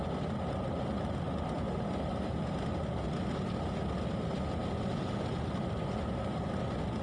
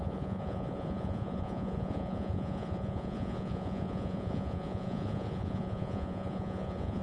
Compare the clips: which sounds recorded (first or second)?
first